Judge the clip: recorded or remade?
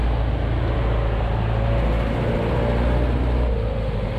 recorded